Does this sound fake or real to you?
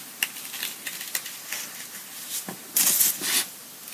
real